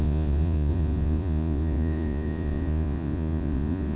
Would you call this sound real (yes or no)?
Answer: no